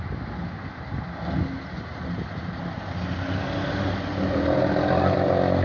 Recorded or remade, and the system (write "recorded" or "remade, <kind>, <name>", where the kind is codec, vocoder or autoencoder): recorded